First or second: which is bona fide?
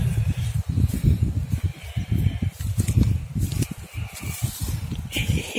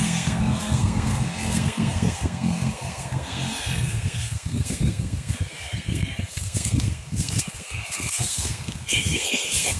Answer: first